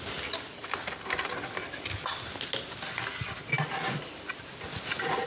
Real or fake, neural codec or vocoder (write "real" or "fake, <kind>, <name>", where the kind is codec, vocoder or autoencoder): real